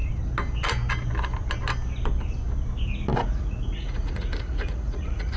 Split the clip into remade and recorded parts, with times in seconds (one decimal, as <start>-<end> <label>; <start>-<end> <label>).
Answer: 0.0-3.2 recorded; 3.2-5.4 remade